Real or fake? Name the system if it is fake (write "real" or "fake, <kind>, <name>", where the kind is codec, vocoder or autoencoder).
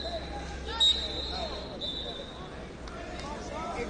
real